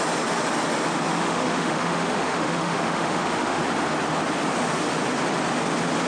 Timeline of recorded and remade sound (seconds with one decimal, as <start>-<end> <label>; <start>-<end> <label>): 0.0-1.2 recorded; 1.2-3.6 remade; 3.6-6.1 recorded